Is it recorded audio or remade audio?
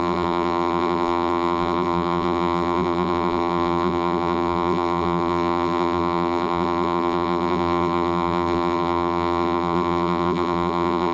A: remade